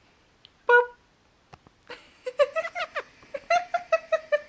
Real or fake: real